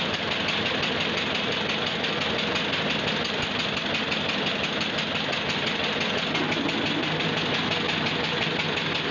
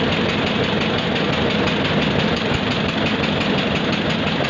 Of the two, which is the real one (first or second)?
first